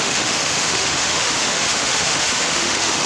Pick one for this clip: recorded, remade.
remade